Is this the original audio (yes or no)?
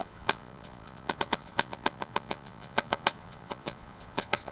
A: no